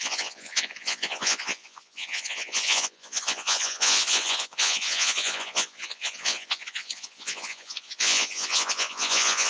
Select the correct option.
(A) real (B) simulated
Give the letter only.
B